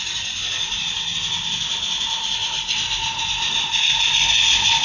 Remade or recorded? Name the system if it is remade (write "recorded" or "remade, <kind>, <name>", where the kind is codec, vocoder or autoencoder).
recorded